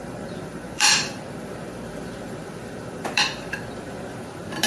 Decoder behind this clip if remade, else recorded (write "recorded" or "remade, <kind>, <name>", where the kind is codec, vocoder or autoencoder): remade, vocoder, BigVGAN v2